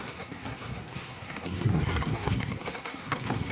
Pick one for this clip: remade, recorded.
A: remade